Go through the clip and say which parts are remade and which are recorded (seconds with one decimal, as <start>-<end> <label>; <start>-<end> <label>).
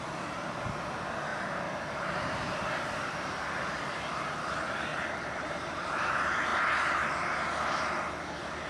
0.0-1.3 recorded; 1.3-2.5 remade; 2.5-4.9 recorded; 4.9-6.1 remade; 6.1-8.7 recorded